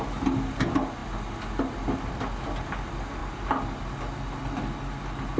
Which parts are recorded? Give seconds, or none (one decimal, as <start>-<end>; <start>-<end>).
0.0-5.4